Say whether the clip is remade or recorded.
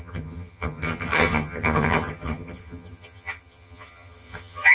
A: remade